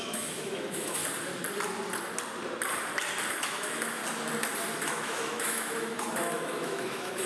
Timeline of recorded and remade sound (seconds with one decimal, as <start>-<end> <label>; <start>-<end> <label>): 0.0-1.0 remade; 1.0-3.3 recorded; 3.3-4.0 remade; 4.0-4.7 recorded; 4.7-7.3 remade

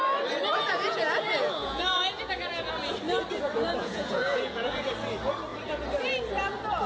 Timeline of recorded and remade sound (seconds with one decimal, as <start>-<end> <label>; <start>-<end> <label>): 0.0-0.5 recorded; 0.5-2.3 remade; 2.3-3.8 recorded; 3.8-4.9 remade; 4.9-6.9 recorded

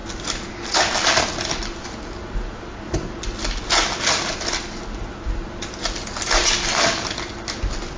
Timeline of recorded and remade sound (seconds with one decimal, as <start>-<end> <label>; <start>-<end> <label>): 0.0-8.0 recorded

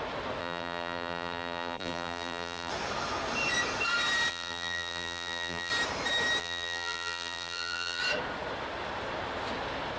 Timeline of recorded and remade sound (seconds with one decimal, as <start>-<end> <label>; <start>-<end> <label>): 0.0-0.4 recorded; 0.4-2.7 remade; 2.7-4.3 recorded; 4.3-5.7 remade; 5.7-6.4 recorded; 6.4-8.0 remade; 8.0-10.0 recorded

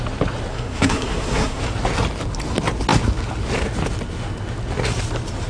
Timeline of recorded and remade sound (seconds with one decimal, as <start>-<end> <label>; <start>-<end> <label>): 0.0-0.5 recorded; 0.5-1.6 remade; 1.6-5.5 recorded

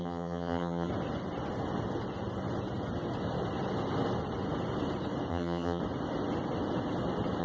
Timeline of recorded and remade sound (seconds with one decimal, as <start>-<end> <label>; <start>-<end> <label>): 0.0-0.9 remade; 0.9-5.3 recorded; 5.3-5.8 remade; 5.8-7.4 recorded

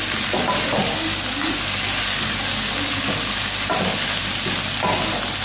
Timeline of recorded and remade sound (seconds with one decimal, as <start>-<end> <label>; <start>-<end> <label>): 0.0-5.4 recorded